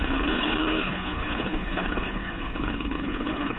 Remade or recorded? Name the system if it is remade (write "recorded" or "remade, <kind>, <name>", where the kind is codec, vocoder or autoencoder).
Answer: remade, codec, HILCodec